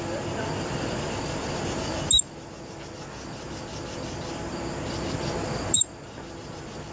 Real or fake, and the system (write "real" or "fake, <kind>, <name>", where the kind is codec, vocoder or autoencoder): real